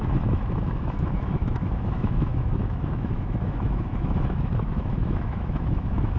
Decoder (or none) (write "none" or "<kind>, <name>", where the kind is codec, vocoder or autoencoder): autoencoder, DAC-VAE